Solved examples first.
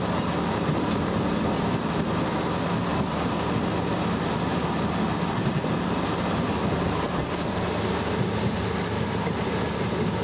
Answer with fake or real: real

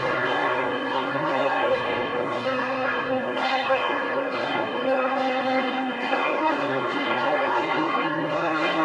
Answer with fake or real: fake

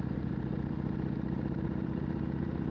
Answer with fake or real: fake